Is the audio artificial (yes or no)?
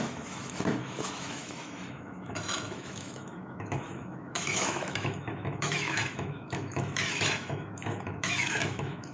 yes